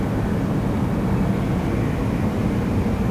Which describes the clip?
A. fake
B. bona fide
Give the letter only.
B